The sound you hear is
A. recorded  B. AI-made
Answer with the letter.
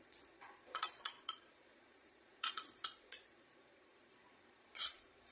B